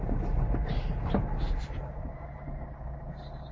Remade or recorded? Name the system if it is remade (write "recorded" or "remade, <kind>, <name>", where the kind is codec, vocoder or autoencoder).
recorded